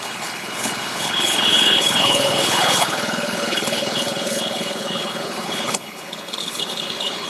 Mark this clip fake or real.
fake